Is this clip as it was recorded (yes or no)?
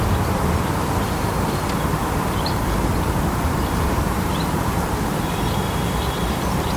no